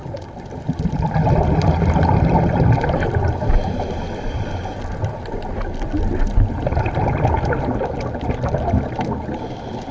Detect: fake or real real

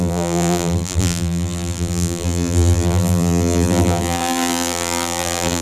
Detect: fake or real fake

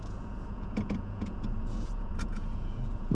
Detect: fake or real fake